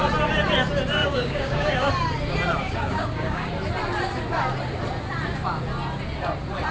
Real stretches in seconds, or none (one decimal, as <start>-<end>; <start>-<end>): 0.0-1.0; 1.9-2.6; 3.5-6.7